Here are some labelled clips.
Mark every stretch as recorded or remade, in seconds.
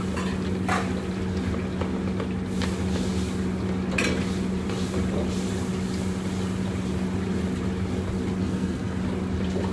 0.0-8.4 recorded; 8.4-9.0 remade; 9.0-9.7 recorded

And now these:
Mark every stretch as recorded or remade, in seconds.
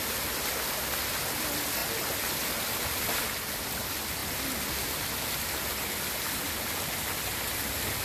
0.0-8.0 recorded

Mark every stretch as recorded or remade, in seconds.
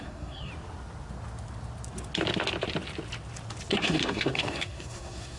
0.0-0.5 remade; 0.5-3.7 recorded; 3.7-5.4 remade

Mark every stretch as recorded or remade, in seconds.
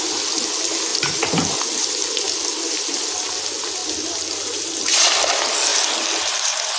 0.0-6.8 recorded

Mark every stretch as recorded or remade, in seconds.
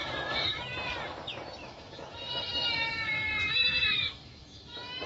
0.0-0.6 remade; 0.6-1.6 recorded; 1.6-5.1 remade